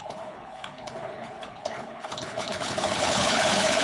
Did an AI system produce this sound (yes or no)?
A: yes